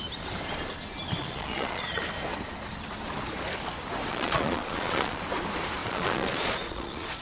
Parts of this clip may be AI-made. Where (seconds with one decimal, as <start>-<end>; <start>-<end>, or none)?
1.2-2.0; 4.1-5.2; 5.8-7.2